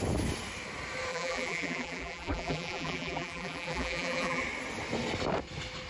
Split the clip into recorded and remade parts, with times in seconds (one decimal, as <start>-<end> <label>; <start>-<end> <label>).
0.0-1.1 recorded; 1.1-4.4 remade; 4.4-5.9 recorded